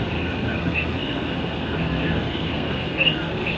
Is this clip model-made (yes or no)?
yes